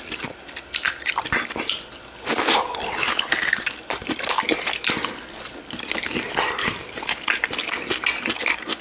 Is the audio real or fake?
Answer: real